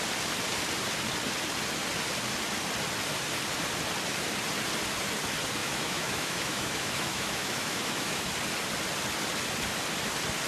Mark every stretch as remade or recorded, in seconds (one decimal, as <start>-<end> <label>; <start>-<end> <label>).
0.0-5.6 recorded; 5.6-8.3 remade; 8.3-10.5 recorded